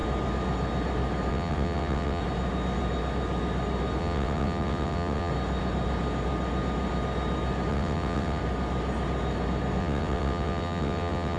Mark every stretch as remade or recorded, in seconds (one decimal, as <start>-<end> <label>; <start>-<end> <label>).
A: 0.0-1.3 recorded; 1.3-2.2 remade; 2.2-4.0 recorded; 4.0-5.3 remade; 5.3-7.7 recorded; 7.7-8.4 remade; 8.4-9.8 recorded; 9.8-11.4 remade